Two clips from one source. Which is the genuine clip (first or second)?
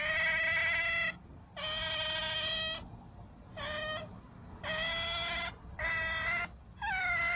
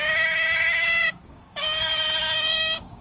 first